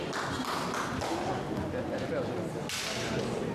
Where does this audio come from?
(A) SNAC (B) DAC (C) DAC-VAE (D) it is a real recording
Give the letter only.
D